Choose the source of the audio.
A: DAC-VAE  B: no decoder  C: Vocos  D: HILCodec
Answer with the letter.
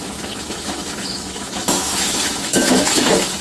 A